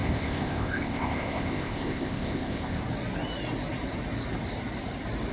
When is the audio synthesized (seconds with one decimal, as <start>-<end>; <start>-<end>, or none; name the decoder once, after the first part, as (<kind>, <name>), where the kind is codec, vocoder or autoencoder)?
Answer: 0.0-2.8 (codec, ZipCodec)